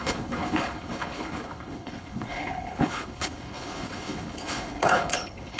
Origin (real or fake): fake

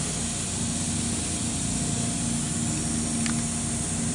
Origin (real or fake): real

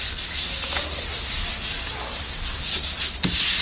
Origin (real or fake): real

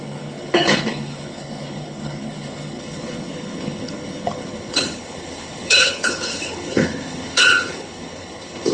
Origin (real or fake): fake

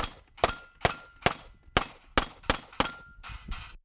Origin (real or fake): real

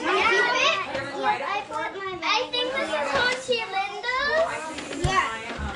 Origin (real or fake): real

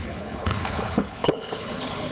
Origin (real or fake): fake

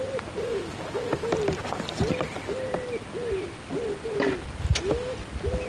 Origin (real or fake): real